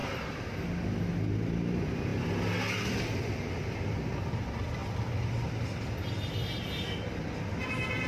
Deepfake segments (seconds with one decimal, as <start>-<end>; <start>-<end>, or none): none